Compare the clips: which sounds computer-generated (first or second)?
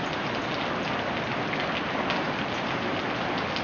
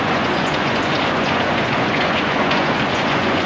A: second